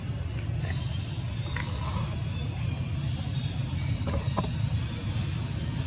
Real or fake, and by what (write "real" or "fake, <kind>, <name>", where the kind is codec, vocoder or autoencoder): real